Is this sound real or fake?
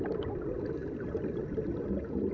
real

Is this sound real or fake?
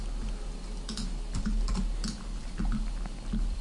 real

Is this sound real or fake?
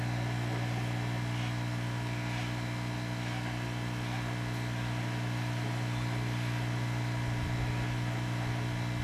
real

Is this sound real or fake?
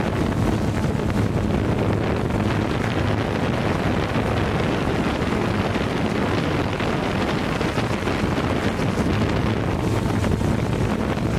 real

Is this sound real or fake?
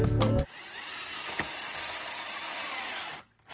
real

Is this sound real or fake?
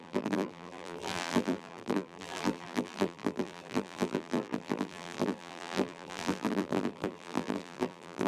fake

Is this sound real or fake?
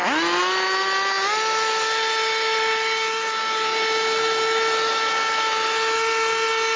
real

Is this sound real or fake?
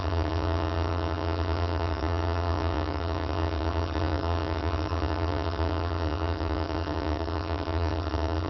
fake